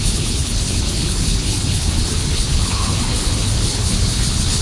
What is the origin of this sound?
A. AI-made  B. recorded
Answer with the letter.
A